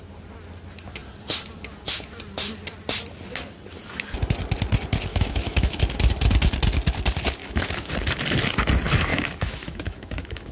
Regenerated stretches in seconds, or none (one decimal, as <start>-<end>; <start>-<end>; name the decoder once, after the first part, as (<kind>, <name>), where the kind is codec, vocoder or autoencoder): 5.1-5.8 (autoencoder, DAC-VAE); 7.4-7.9; 9.1-10.5